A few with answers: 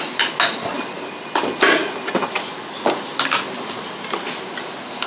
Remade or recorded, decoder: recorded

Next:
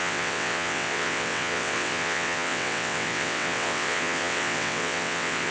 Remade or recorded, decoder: remade, vocoder, WaveNeXt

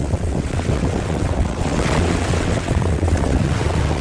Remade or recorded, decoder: remade, vocoder, WaveNeXt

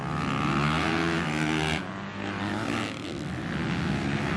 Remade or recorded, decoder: recorded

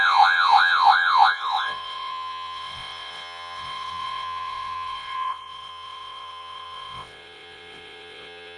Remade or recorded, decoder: remade, vocoder, WaveNeXt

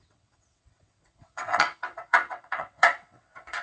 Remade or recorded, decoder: remade, vocoder, WaveNeXt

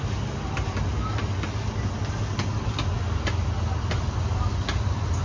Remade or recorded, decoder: recorded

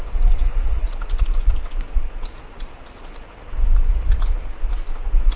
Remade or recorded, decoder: recorded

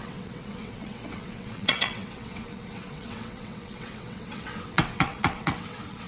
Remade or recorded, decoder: remade, vocoder, WaveNeXt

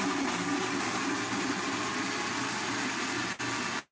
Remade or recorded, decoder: recorded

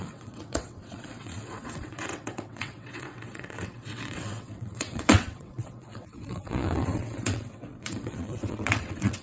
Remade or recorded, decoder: remade, vocoder, WaveNeXt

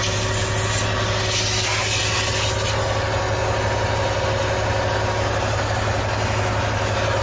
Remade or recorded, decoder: recorded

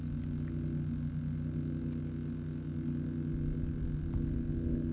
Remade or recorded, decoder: recorded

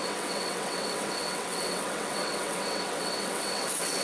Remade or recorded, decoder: remade, vocoder, WaveNeXt